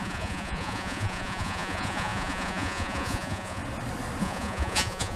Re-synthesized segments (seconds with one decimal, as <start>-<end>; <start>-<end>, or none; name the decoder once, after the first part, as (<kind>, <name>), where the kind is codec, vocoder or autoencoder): 0.0-3.6 (vocoder, Vocos); 4.2-5.2